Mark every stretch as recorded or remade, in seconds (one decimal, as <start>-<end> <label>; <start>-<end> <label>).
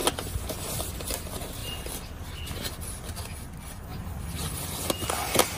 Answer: 0.0-5.6 recorded